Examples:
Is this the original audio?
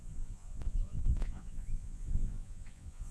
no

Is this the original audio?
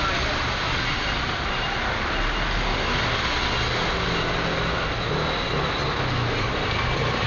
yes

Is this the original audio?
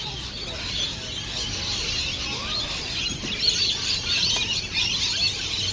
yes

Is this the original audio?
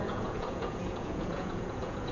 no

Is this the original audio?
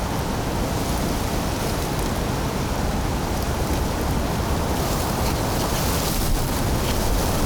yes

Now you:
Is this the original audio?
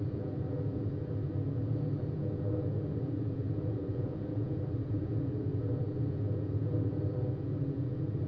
no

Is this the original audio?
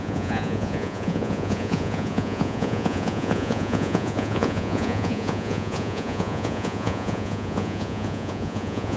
no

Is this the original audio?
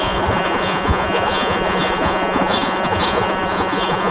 no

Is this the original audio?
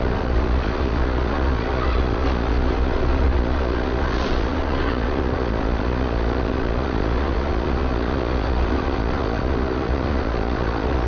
no